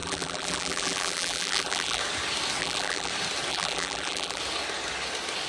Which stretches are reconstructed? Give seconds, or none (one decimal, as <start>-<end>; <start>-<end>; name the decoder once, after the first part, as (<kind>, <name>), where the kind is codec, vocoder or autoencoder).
0.0-2.0 (vocoder, BigVGAN v2); 2.6-3.1; 3.5-4.4

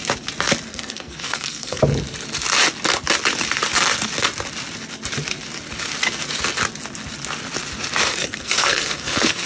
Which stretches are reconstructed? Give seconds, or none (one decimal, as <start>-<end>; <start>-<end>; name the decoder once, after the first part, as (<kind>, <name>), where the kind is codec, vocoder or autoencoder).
0.7-1.8 (codec, SNAC); 8.1-9.5

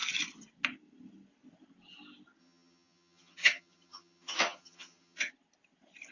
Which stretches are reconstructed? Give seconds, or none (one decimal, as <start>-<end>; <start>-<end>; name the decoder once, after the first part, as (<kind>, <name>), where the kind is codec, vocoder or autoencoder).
2.4-5.3 (vocoder, HiFi-GAN)

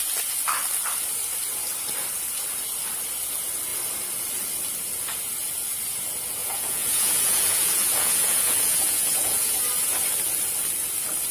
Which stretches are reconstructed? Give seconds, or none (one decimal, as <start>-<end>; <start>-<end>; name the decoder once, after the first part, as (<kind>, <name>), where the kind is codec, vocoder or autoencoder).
6.4-9.6 (vocoder, Vocos)

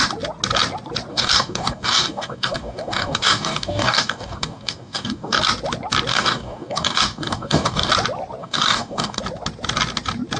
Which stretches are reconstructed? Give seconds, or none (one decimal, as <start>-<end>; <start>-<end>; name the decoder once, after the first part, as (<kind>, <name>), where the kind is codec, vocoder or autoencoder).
1.1-5.4 (codec, DAC); 6.1-7.9; 8.4-9.2